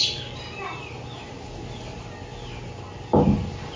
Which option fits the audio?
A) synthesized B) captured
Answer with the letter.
B